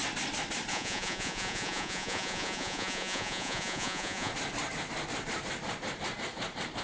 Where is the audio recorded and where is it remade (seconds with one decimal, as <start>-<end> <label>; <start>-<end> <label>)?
0.0-0.7 recorded; 0.7-4.3 remade; 4.3-6.8 recorded